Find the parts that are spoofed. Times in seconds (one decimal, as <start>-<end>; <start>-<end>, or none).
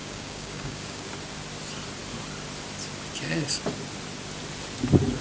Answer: 0.0-1.1